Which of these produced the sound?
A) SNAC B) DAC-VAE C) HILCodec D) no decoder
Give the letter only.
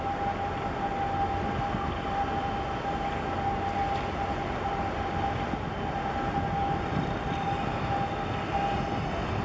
D